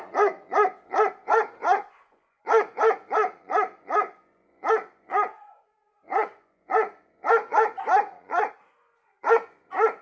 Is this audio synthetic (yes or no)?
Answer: yes